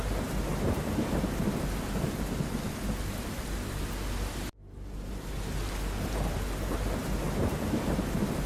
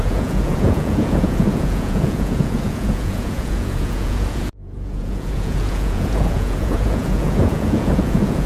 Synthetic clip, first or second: second